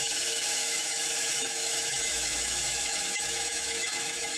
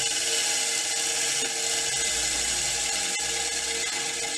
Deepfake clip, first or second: first